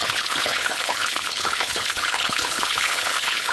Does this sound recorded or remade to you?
remade